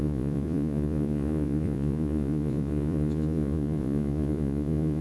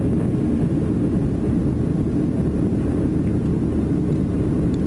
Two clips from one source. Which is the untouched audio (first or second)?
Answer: second